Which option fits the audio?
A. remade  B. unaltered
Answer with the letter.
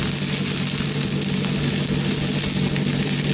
B